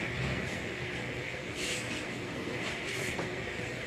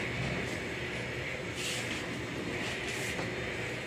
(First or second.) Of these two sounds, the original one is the second